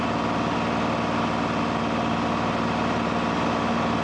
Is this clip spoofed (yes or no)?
no